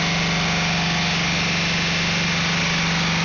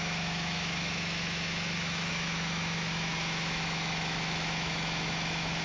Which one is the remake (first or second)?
second